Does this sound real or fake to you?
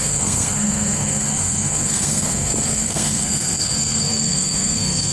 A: fake